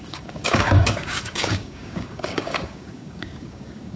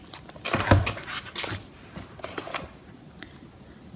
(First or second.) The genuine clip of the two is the second